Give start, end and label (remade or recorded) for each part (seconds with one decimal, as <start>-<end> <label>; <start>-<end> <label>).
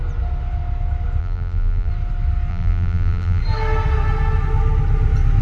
0.0-1.2 recorded; 1.2-1.9 remade; 1.9-2.5 recorded; 2.5-3.4 remade; 3.4-5.4 recorded